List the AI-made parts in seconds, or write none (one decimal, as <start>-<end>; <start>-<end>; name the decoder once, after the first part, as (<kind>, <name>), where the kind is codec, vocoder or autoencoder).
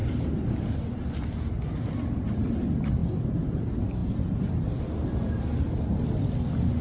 none